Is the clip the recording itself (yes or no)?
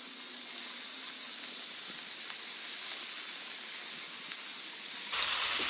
yes